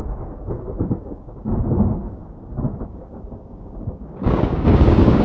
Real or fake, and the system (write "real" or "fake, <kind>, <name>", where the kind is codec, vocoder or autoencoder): fake, codec, DAC